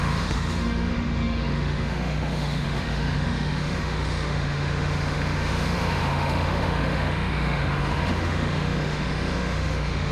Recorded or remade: remade